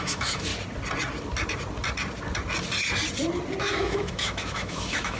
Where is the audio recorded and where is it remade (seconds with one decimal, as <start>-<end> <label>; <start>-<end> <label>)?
0.0-0.5 remade; 0.5-3.6 recorded; 3.6-5.2 remade